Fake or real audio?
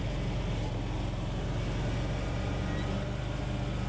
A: real